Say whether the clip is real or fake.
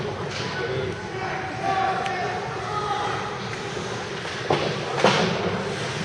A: real